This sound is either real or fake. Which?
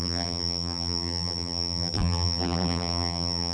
fake